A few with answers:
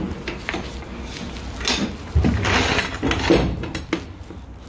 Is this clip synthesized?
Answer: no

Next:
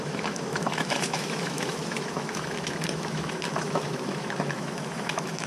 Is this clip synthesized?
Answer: yes